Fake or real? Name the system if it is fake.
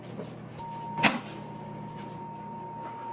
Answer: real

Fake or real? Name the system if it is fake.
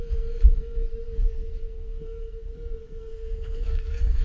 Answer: fake, codec, SNAC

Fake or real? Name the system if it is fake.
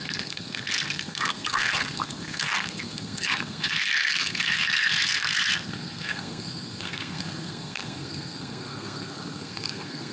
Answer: fake, codec, SNAC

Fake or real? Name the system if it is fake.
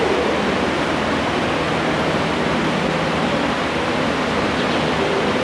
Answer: real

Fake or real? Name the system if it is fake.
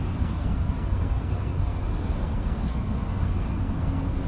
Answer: fake, codec, SNAC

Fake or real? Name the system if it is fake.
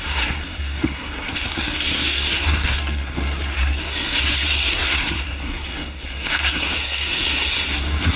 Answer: fake, codec, SNAC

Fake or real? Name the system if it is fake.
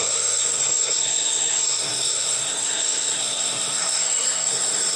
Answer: fake, codec, SNAC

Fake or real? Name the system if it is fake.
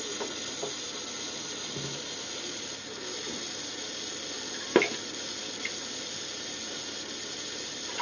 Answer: real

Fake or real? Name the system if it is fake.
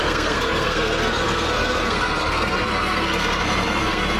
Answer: fake, codec, SNAC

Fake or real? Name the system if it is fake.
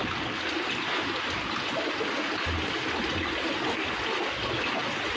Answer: real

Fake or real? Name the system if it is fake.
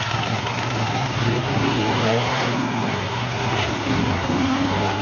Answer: fake, codec, SNAC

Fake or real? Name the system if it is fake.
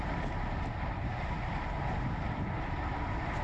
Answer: real